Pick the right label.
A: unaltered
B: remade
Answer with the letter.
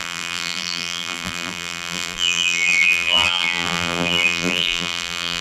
B